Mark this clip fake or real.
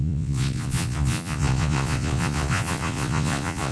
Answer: fake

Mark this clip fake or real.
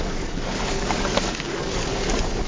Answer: fake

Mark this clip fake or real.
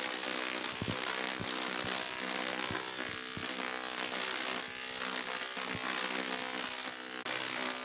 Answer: real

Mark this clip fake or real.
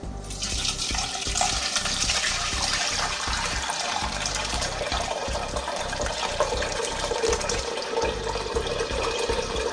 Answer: fake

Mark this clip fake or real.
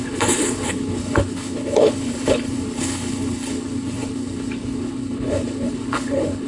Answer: fake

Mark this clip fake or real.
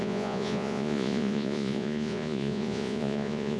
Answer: fake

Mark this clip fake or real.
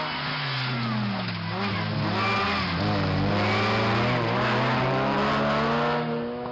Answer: real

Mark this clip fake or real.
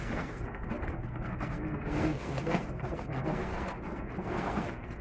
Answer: fake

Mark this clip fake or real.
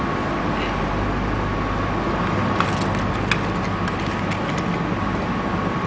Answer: real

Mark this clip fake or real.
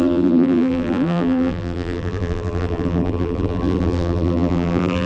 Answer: fake